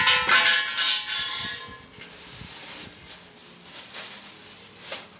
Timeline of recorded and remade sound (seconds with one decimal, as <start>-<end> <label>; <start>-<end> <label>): 0.0-3.4 recorded; 3.4-4.7 remade; 4.7-5.2 recorded